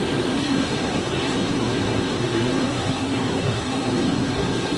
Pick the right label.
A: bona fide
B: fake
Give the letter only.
B